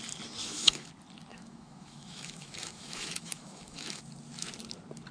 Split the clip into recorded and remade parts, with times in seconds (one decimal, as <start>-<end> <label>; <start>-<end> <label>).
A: 0.0-0.4 recorded; 0.4-0.9 remade; 0.9-1.3 recorded; 1.3-4.0 remade; 4.0-5.1 recorded